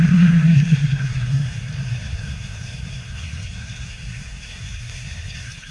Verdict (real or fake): fake